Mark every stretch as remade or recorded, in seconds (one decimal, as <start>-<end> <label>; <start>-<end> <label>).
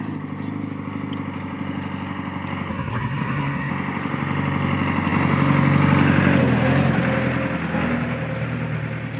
0.0-2.7 recorded; 2.7-3.7 remade; 3.7-9.2 recorded